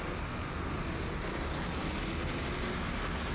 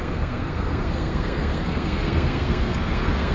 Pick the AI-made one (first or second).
second